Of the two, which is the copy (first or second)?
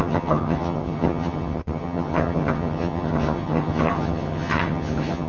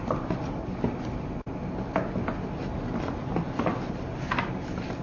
first